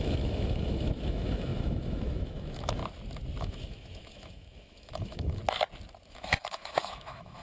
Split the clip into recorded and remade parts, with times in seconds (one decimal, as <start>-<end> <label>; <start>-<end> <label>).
0.0-2.8 remade; 2.8-3.4 recorded; 3.4-5.4 remade; 5.4-6.1 recorded; 6.1-7.4 remade

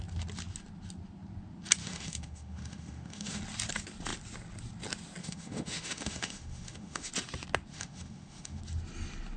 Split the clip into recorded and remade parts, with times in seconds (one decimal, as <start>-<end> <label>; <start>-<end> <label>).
0.0-1.8 recorded; 1.8-3.4 remade; 3.4-5.2 recorded; 5.2-7.1 remade; 7.1-7.7 recorded; 7.7-8.6 remade; 8.6-9.4 recorded

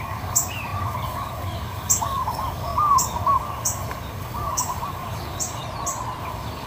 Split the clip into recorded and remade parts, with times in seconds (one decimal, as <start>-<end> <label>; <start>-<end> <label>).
0.0-5.6 remade; 5.6-6.2 recorded; 6.2-6.7 remade